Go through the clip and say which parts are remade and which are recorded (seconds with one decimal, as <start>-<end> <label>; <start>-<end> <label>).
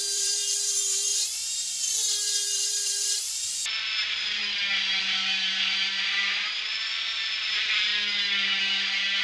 0.0-4.4 remade; 4.4-5.0 recorded; 5.0-7.9 remade; 7.9-8.6 recorded; 8.6-9.2 remade